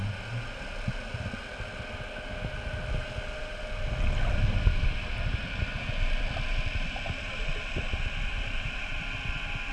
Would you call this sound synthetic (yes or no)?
no